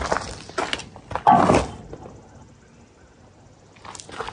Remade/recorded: recorded